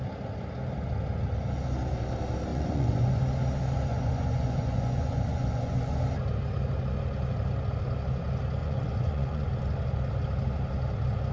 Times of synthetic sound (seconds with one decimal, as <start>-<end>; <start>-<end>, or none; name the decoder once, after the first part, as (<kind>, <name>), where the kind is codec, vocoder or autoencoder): 2.5-3.2 (vocoder, Vocos); 3.9-6.0; 8.6-9.5